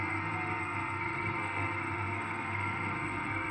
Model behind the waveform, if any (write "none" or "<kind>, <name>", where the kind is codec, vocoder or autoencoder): codec, SNAC